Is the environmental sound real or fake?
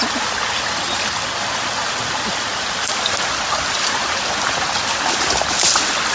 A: real